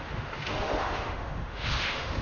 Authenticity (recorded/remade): remade